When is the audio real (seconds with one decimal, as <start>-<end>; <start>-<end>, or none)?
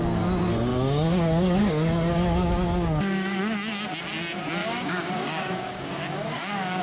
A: 0.0-0.7; 3.4-4.6